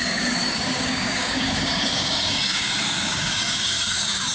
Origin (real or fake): fake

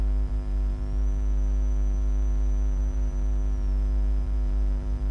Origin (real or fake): fake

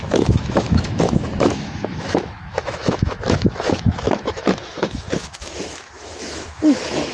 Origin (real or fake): fake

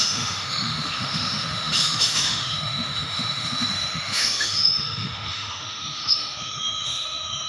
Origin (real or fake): fake